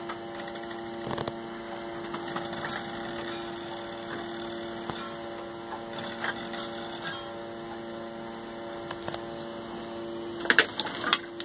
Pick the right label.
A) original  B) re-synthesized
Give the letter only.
A